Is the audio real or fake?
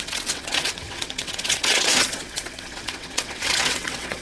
fake